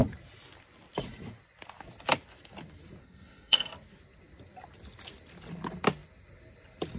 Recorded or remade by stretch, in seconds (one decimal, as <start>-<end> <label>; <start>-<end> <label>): 0.0-3.0 recorded; 3.0-3.7 remade; 3.7-7.0 recorded